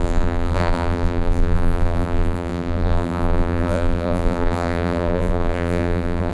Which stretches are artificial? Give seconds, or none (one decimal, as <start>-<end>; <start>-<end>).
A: 0.0-6.3